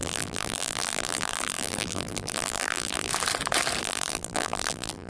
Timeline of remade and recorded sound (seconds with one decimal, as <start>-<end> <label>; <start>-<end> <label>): 0.0-3.1 remade; 3.1-3.8 recorded; 3.8-5.1 remade